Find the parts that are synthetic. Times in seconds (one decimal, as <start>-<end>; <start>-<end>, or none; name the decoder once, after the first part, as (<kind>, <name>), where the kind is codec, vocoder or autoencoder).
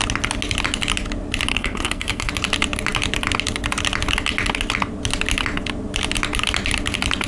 1.5-2.3 (codec, SNAC)